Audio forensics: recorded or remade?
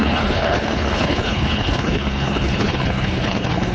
remade